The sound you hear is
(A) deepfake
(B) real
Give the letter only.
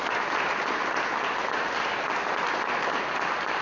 B